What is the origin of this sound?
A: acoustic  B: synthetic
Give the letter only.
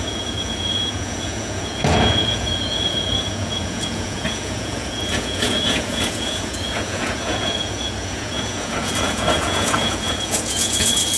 B